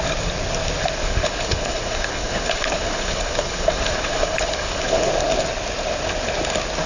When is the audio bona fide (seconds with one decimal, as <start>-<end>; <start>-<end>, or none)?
0.0-1.0; 5.1-6.9